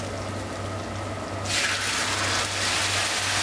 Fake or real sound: real